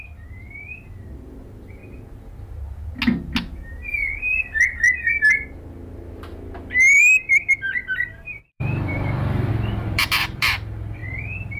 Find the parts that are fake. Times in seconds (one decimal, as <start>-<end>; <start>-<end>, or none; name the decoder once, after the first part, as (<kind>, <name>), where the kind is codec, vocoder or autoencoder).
0.0-1.8 (vocoder, BigVGAN v2); 7.0-11.6